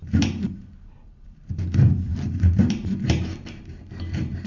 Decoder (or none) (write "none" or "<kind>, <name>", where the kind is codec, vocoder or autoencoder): vocoder, BigVGAN v2